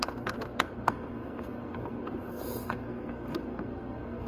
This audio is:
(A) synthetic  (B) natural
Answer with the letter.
A